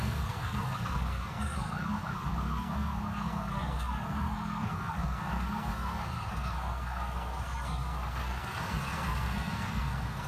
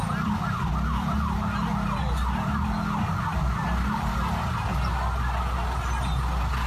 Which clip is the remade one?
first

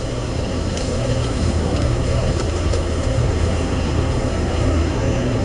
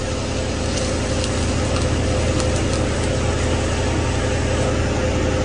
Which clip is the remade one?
first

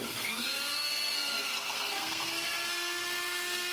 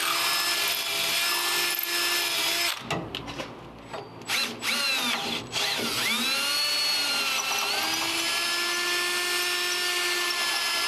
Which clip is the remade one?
first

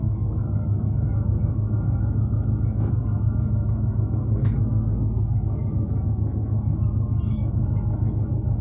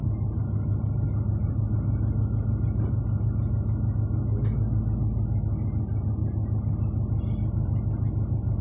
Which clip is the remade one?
first